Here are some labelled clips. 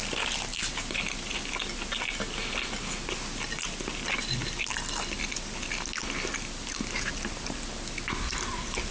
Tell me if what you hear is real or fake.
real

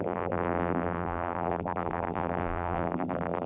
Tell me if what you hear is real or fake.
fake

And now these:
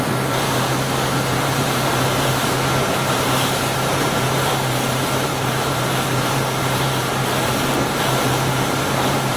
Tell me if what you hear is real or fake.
fake